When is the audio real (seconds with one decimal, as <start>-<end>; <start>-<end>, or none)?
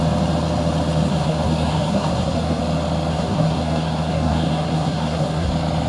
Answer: 0.0-1.1; 2.6-3.1; 5.5-5.9